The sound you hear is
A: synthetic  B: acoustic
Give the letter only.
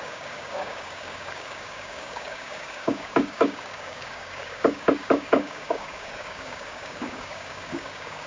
A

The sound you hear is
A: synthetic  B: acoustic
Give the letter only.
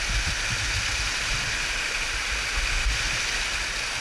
B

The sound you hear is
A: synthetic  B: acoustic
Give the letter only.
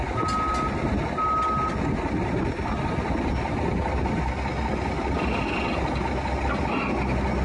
B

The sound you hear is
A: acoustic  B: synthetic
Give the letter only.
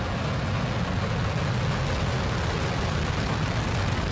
A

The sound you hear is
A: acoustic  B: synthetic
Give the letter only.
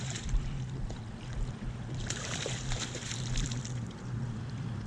B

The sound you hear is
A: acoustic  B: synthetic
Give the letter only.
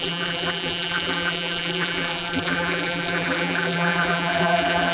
B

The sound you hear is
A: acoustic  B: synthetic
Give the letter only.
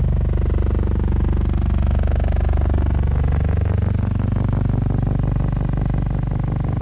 A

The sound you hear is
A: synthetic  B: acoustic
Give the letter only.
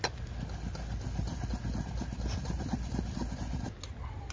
B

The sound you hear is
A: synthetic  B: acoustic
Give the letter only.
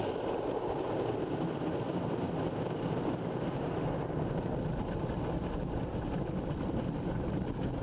B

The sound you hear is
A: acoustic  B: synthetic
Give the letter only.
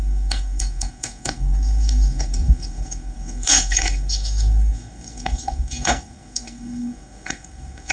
B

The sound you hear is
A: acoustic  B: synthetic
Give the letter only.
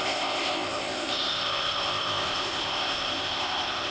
B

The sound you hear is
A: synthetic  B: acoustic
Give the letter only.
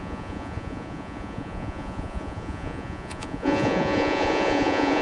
A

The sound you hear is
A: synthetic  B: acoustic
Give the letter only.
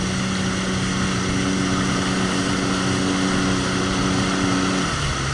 B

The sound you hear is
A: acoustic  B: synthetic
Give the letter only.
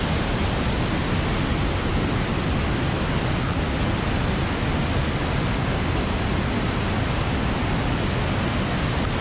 A